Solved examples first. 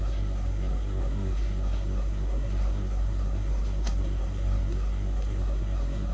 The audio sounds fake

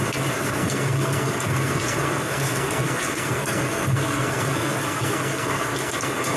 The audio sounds fake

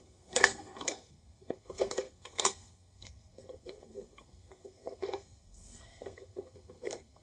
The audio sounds fake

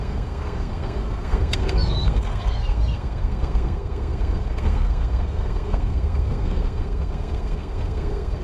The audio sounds fake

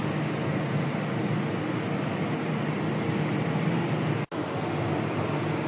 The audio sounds real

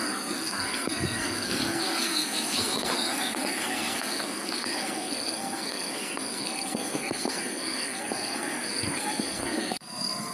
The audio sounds fake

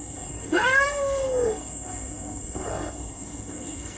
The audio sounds fake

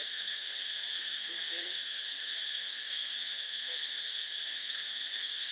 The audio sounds fake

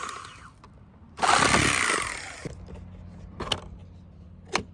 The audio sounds real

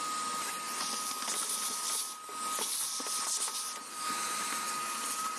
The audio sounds real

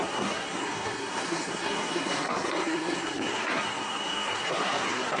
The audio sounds fake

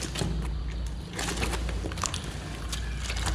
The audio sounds real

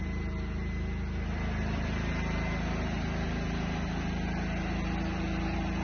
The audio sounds real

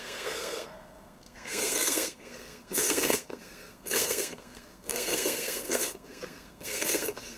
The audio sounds fake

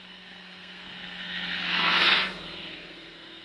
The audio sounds fake